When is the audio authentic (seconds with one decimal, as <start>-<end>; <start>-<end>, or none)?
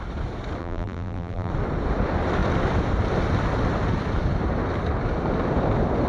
0.0-0.6; 1.5-6.1